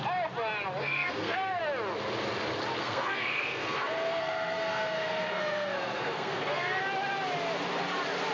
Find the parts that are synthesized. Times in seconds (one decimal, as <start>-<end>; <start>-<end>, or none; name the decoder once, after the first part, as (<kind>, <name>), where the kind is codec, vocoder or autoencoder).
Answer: 0.8-1.6 (codec, SNAC); 2.8-6.8